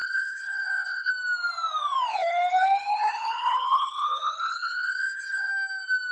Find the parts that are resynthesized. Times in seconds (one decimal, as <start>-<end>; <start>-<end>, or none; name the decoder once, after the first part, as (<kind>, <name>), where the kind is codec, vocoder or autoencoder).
0.0-1.1 (codec, HILCodec); 2.1-5.5